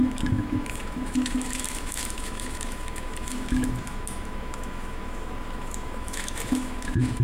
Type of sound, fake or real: fake